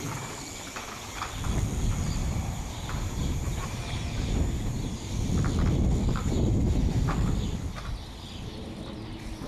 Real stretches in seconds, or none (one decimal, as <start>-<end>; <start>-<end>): 0.0-2.2; 5.3-6.2; 7.0-9.5